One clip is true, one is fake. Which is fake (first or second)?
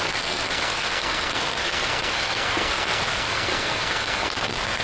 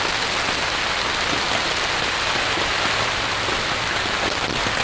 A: first